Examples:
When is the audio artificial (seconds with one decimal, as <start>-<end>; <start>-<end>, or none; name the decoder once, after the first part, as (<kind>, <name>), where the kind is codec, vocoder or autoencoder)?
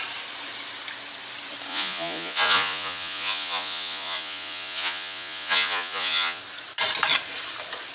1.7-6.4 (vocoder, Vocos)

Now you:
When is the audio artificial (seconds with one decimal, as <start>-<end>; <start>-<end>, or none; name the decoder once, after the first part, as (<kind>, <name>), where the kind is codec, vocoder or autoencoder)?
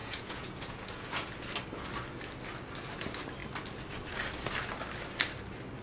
0.0-1.3 (vocoder, Vocos)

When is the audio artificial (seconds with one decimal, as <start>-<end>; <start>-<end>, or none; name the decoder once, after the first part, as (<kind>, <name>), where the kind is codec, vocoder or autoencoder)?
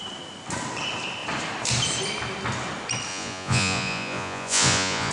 3.1-5.1 (vocoder, Vocos)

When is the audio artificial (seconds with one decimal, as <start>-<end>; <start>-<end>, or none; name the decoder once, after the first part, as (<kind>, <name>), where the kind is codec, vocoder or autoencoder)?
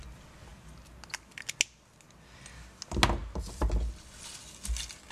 none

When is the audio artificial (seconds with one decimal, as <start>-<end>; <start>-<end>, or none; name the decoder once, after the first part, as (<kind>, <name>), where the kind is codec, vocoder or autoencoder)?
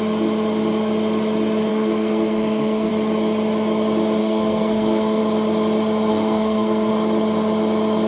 1.7-2.9 (codec, SNAC); 4.2-5.2; 6.1-6.9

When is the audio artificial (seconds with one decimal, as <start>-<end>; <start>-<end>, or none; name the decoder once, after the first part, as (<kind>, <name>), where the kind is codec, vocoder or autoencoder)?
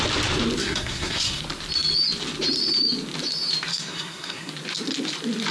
0.6-1.4 (codec, SNAC); 3.7-4.5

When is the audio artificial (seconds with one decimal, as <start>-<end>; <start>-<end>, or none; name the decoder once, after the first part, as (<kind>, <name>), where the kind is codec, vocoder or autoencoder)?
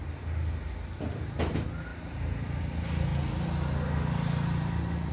1.9-2.6 (vocoder, BigVGAN v2)